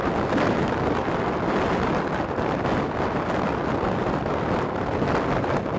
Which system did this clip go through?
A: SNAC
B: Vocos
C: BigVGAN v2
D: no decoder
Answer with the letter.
D